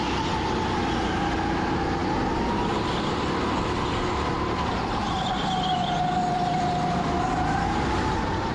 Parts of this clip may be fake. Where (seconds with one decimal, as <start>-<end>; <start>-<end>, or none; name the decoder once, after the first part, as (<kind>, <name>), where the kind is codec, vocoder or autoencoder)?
none